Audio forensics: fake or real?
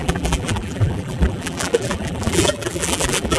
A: fake